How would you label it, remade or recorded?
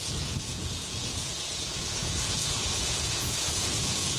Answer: remade